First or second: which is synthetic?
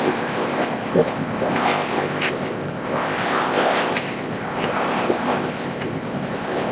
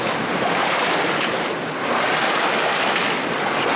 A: first